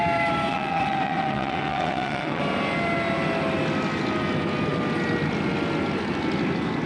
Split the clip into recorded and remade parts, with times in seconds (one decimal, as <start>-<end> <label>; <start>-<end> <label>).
0.0-0.5 recorded; 0.5-2.4 remade; 2.4-6.9 recorded